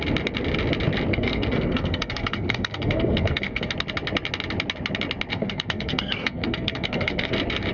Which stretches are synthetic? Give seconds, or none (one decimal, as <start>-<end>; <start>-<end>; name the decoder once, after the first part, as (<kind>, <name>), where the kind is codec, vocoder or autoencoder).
1.1-3.7 (codec, SNAC); 5.3-7.3